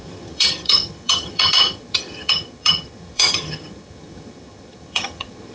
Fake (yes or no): yes